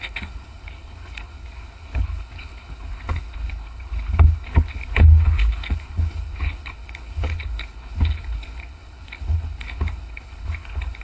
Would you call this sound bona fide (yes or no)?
no